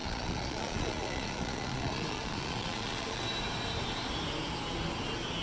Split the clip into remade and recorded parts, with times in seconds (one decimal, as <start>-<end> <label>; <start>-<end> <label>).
0.0-3.2 remade; 3.2-5.4 recorded